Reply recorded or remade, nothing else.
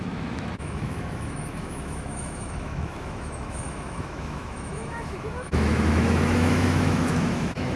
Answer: remade